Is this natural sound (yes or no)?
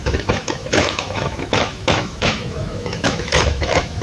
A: no